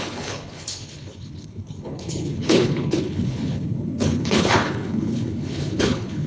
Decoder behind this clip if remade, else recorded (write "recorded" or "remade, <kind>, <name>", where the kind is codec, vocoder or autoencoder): remade, codec, HILCodec